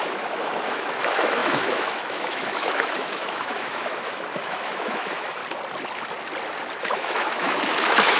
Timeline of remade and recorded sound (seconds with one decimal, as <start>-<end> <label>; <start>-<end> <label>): 0.0-5.4 remade; 5.4-6.8 recorded; 6.8-8.2 remade